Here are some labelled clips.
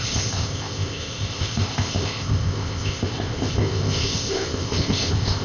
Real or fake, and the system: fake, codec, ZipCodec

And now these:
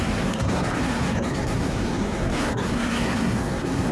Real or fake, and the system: fake, codec, SNAC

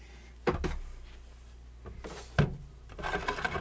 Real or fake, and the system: real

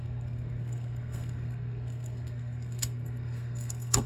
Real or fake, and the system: fake, codec, SNAC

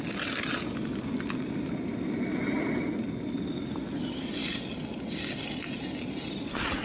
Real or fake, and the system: real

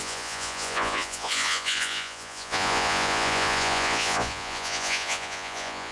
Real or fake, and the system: fake, vocoder, Vocos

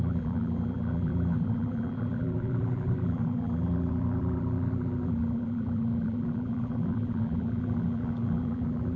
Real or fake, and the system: fake, vocoder, BigVGAN v2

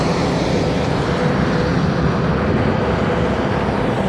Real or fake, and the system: real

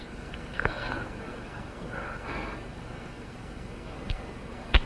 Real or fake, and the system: fake, codec, SNAC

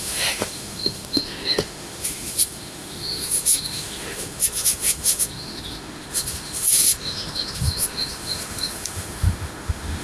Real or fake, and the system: fake, autoencoder, DAC-VAE